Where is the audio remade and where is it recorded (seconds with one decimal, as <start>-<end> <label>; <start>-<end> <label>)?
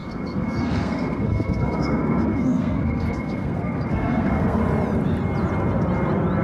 0.0-4.6 remade; 4.6-6.4 recorded